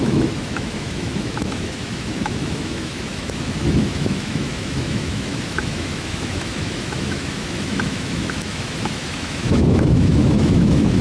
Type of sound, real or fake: fake